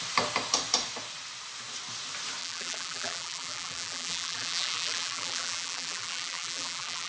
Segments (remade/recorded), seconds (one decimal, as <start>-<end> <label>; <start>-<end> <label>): 0.0-2.4 recorded; 2.4-7.1 remade